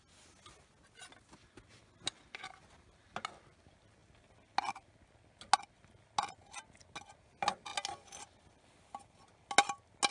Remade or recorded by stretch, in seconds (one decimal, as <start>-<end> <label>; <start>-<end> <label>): 0.0-10.1 recorded